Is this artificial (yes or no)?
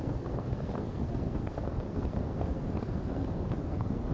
yes